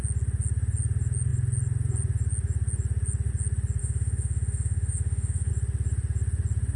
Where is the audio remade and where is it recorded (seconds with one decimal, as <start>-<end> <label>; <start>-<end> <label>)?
0.0-3.8 recorded; 3.8-5.5 remade; 5.5-6.8 recorded